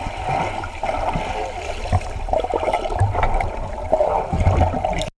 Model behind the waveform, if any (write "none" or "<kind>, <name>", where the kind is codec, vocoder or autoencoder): none